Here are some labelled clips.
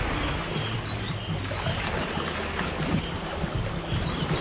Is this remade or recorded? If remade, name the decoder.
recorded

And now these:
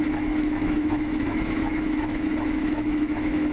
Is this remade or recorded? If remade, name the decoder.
remade, autoencoder, DAC-VAE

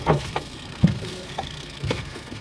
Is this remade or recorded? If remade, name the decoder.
remade, codec, SNAC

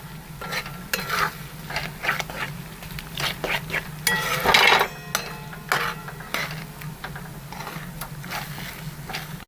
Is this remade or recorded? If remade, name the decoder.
recorded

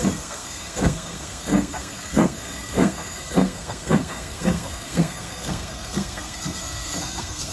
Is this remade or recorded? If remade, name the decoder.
remade, codec, SNAC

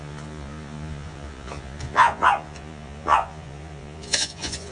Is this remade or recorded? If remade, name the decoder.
remade, vocoder, Vocos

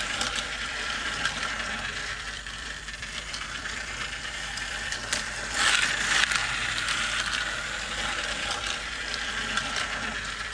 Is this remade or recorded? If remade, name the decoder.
remade, vocoder, BigVGAN v2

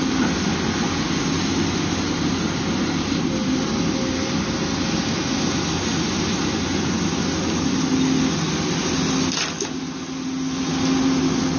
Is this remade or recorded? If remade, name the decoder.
recorded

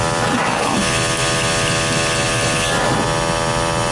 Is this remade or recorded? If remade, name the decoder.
recorded